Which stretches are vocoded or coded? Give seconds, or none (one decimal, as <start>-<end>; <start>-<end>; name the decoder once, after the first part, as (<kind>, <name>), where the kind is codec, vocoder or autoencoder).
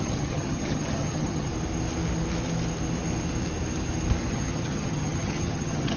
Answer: 0.0-1.5 (vocoder, HiFi-GAN); 4.3-6.0